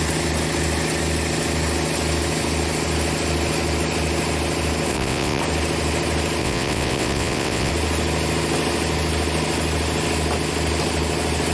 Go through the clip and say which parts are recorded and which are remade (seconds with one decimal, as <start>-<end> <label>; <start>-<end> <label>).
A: 0.0-4.9 recorded; 4.9-5.4 remade; 5.4-6.4 recorded; 6.4-7.7 remade; 7.7-11.5 recorded